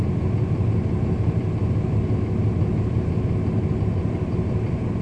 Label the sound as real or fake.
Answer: real